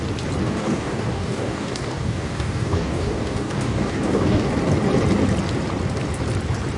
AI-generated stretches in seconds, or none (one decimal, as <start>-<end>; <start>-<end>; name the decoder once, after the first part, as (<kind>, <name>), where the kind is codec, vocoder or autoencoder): 0.4-4.5 (codec, DAC)